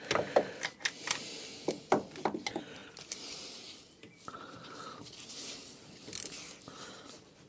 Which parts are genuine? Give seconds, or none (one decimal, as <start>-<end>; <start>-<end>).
0.0-7.5